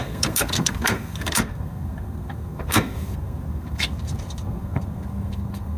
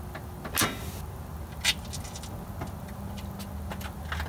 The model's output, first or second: first